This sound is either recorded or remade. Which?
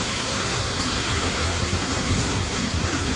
remade